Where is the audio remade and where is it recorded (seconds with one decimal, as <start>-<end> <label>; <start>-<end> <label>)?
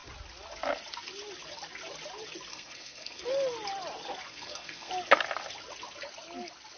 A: 0.0-2.5 recorded; 2.5-3.2 remade; 3.2-4.3 recorded; 4.3-4.9 remade; 4.9-6.8 recorded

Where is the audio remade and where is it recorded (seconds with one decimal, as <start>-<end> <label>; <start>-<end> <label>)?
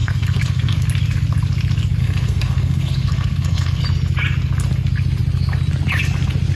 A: 0.0-0.8 remade; 0.8-2.0 recorded; 2.0-3.8 remade; 3.8-6.5 recorded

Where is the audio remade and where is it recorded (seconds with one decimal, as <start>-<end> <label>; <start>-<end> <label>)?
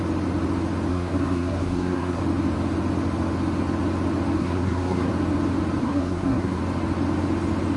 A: 0.0-0.9 recorded; 0.9-2.2 remade; 2.2-4.4 recorded; 4.4-5.1 remade; 5.1-5.8 recorded; 5.8-6.6 remade; 6.6-7.8 recorded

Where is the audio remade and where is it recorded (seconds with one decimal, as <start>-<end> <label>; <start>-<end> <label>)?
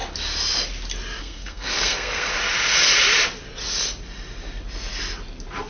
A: 0.0-1.2 recorded; 1.2-2.3 remade; 2.3-5.7 recorded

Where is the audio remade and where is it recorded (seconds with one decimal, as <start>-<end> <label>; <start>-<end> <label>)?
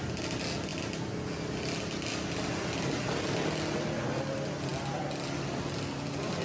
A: 0.0-6.4 recorded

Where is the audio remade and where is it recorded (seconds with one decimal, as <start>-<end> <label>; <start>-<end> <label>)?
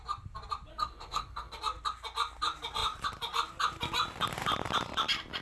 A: 0.0-0.7 recorded; 0.7-1.6 remade; 1.6-5.4 recorded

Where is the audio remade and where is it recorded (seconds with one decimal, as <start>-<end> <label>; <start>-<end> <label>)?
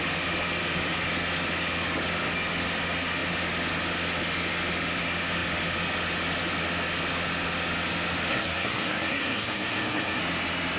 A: 0.0-8.3 recorded; 8.3-10.2 remade; 10.2-10.8 recorded